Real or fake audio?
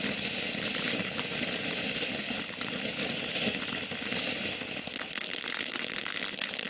real